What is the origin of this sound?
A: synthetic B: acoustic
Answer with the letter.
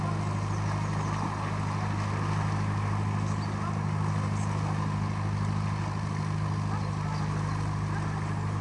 B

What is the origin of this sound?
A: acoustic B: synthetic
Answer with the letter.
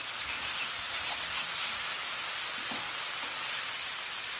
A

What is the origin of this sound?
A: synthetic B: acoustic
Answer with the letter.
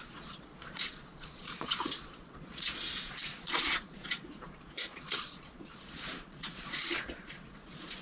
A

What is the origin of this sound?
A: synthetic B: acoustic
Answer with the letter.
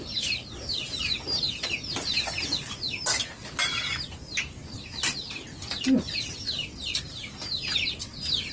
B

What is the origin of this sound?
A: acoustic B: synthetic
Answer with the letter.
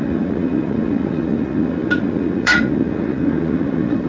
B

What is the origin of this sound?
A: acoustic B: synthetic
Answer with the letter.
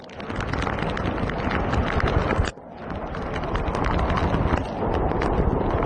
A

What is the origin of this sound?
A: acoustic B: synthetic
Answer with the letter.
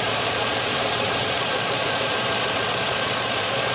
B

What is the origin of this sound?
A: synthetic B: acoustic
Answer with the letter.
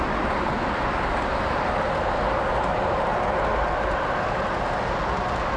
B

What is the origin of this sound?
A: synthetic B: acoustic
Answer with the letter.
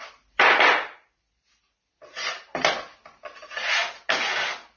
B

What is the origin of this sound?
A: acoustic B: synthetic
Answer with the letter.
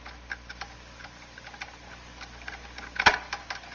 A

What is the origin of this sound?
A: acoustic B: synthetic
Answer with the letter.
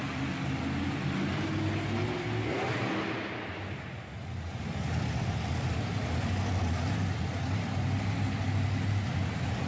A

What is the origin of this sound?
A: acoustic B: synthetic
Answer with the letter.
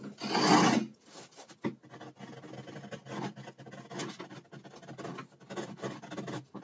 A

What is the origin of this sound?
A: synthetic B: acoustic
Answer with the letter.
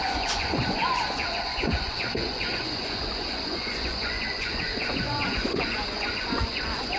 A